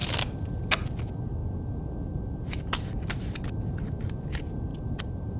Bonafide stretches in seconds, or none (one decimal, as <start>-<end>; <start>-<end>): 0.0-5.4